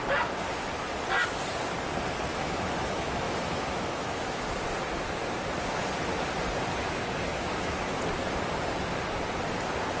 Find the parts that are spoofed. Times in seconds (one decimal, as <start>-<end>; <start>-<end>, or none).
2.3-4.4; 7.3-8.0